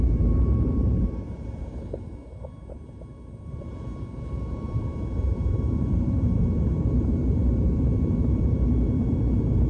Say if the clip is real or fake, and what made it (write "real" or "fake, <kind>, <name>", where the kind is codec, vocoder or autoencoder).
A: fake, vocoder, BigVGAN v2